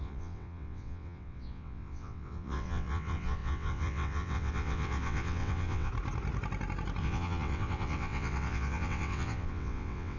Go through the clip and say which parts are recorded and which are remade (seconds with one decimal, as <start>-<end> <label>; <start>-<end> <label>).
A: 0.0-5.9 remade; 5.9-7.0 recorded; 7.0-10.2 remade